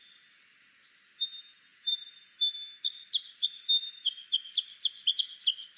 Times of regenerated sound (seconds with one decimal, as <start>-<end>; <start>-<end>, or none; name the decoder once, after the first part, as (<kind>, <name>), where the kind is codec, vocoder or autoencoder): none